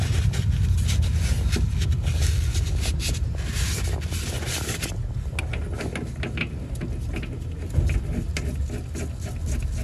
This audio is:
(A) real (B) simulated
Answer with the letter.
A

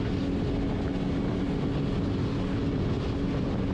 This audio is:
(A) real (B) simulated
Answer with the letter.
A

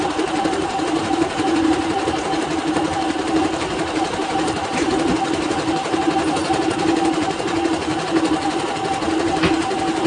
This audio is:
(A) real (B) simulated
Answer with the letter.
B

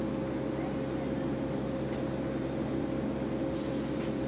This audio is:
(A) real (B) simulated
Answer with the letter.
A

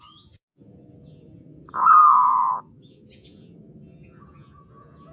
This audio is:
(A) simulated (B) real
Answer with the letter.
A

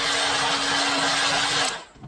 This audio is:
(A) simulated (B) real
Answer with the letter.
B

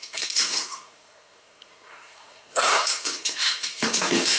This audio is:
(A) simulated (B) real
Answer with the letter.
A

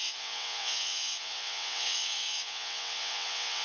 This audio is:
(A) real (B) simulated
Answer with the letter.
B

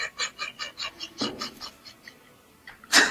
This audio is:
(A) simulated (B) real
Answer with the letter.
B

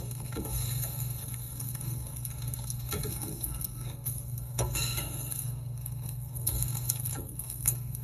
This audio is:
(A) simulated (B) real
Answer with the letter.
A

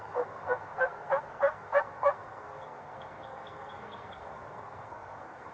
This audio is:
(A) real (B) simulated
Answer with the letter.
B